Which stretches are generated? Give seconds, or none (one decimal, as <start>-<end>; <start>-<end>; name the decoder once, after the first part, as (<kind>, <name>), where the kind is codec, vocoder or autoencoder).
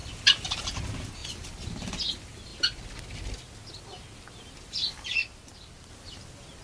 0.0-0.6 (vocoder, BigVGAN v2); 1.2-2.0; 5.2-5.9